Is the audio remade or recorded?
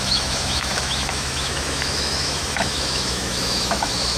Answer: remade